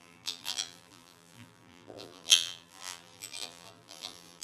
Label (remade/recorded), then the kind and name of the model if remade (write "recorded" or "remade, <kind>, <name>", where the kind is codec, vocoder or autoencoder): remade, vocoder, BigVGAN v2